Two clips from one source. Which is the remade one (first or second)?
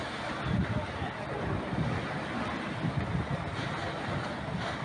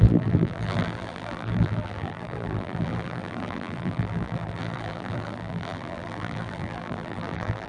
second